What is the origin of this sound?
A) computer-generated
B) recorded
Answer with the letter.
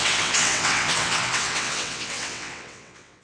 A